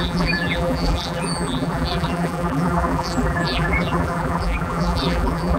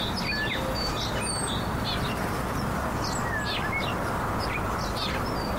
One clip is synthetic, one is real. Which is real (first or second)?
second